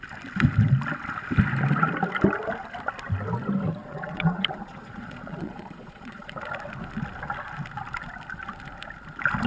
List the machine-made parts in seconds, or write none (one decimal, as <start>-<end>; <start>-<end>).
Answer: 3.8-6.3